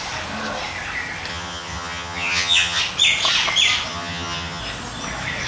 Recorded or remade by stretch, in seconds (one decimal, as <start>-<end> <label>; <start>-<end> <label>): 0.0-1.3 recorded; 1.3-2.8 remade; 2.8-3.9 recorded; 3.9-4.6 remade; 4.6-5.5 recorded